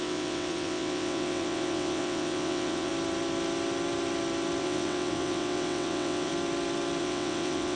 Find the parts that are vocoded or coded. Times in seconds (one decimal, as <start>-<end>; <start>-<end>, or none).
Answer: 0.0-2.9; 4.6-6.3; 7.0-7.8